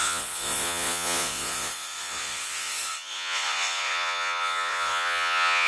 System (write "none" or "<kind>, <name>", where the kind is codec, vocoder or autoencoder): vocoder, Vocos